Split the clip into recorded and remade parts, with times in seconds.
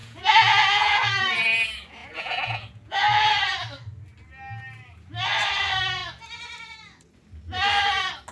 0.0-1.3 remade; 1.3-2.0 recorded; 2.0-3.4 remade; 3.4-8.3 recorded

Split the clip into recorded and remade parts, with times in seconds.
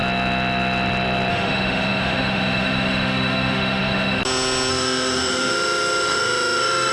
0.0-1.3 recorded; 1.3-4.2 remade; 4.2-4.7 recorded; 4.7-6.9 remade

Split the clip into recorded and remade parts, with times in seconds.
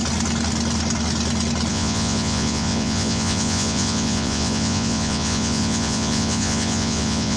0.0-1.7 recorded; 1.7-7.4 remade